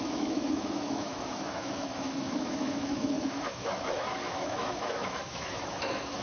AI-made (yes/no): yes